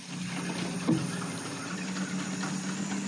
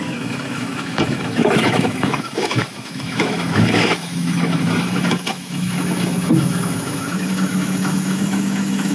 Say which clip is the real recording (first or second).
first